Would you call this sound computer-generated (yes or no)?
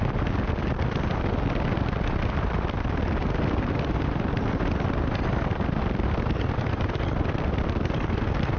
yes